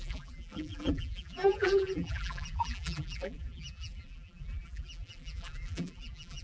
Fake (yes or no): yes